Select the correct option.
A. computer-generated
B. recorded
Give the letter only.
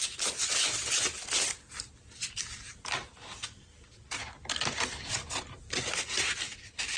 B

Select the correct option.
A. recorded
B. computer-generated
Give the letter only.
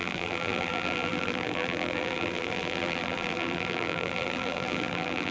B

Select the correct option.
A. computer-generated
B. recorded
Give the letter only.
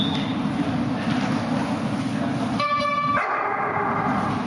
B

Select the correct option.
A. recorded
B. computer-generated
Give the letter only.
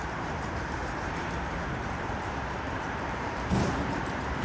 B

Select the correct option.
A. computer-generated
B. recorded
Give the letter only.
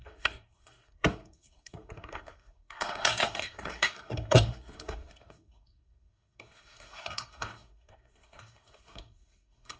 A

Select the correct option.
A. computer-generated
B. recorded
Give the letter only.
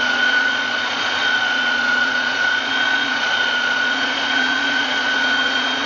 A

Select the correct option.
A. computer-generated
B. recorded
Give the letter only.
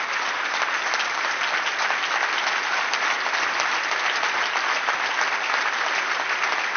B